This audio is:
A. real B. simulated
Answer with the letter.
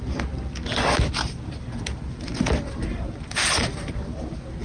A